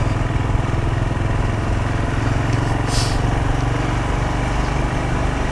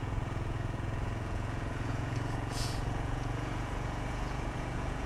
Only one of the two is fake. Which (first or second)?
second